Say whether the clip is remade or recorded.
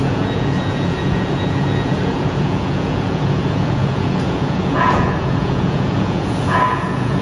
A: remade